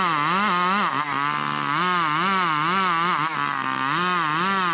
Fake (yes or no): no